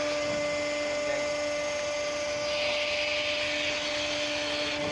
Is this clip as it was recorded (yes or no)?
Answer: yes